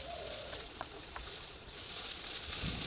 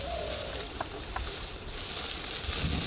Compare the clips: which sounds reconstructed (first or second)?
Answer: first